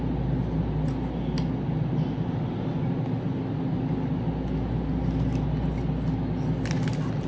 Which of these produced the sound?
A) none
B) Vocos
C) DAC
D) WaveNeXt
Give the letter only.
A